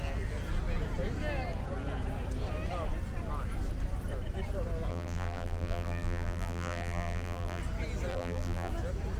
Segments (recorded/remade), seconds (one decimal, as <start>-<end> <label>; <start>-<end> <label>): 0.0-4.9 recorded; 4.9-7.6 remade; 7.6-8.1 recorded; 8.1-8.7 remade; 8.7-9.2 recorded